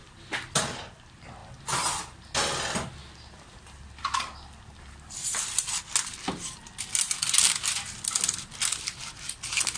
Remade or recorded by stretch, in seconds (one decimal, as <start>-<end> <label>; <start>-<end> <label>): 0.0-0.5 remade; 0.5-1.4 recorded; 1.4-2.0 remade; 2.0-3.0 recorded; 3.0-5.8 remade; 5.8-9.8 recorded